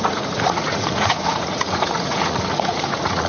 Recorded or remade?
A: remade